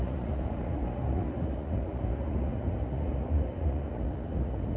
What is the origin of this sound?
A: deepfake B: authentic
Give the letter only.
A